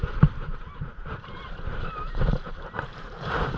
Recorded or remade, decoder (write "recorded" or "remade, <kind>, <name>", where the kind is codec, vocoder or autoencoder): remade, vocoder, BigVGAN v2